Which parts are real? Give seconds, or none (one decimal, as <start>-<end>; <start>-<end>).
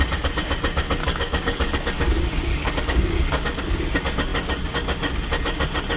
0.0-1.0; 3.6-6.0